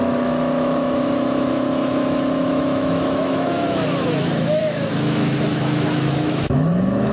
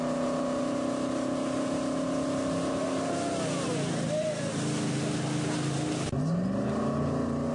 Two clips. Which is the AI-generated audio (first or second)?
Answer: first